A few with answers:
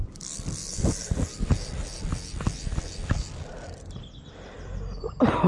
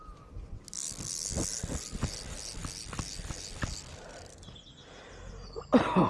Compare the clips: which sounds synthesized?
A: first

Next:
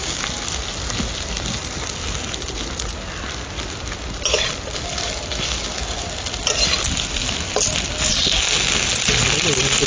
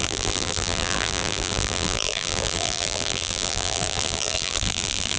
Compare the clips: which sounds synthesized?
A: second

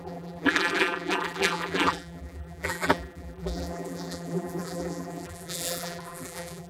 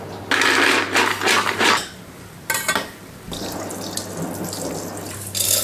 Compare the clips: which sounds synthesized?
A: first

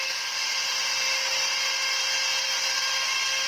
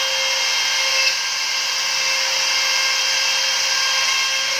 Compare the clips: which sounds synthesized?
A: first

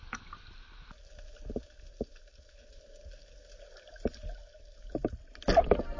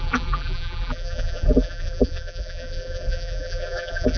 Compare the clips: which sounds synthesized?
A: second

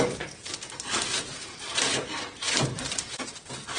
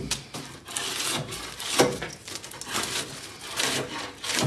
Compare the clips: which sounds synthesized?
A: first